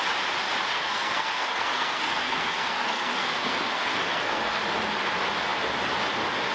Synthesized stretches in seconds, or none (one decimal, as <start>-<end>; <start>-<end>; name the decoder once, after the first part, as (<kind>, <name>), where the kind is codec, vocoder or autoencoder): 0.7-4.6 (codec, SNAC)